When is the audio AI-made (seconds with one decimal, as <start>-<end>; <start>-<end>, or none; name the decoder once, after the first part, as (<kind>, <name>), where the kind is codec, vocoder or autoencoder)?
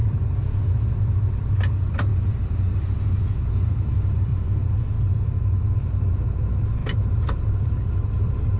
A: 0.0-4.3 (vocoder, BigVGAN v2); 5.0-8.6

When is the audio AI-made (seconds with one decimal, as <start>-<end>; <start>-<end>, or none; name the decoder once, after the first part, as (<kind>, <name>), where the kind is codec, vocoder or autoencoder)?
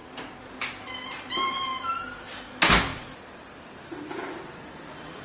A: 0.0-0.5 (vocoder, BigVGAN v2); 2.9-4.4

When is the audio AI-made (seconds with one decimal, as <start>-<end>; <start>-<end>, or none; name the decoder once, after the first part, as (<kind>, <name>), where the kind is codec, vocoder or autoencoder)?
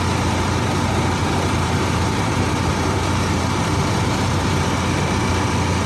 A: 1.2-4.5 (vocoder, BigVGAN v2)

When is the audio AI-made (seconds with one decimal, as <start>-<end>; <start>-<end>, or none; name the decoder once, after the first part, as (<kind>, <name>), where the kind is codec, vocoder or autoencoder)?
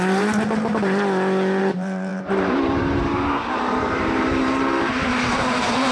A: 0.0-0.8 (vocoder, BigVGAN v2); 1.6-5.9